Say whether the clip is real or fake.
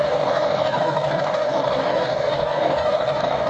fake